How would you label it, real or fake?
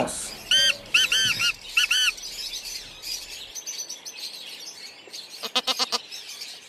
real